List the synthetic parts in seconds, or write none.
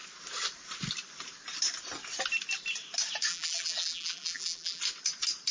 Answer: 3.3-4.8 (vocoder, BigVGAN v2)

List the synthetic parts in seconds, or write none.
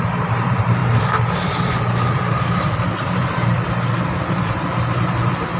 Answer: 0.0-0.8 (vocoder, BigVGAN v2); 2.2-5.6